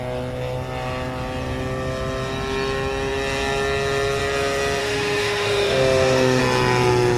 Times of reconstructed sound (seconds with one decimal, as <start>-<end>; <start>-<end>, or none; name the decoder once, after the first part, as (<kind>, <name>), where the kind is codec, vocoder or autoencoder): 4.8-6.4 (autoencoder, DAC-VAE)